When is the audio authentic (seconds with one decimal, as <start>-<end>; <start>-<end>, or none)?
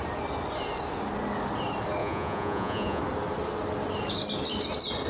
0.0-2.0; 3.0-5.1